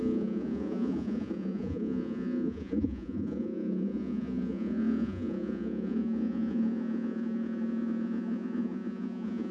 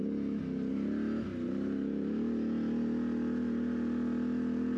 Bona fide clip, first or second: second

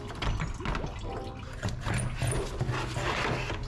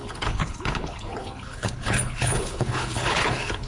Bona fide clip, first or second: first